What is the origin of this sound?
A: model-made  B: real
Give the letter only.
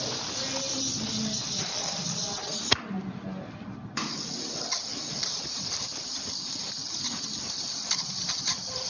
B